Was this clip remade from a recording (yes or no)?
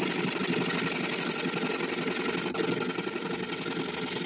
no